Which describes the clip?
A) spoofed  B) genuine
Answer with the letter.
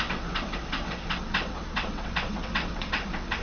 A